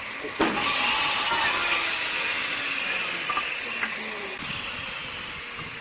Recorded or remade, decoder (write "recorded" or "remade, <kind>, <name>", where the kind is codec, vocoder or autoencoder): recorded